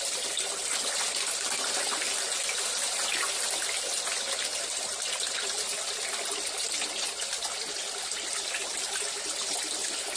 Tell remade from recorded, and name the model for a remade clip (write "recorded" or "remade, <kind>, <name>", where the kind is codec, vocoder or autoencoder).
recorded